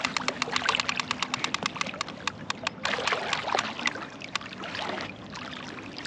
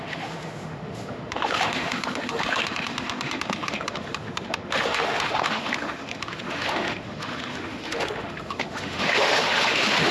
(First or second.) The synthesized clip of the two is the second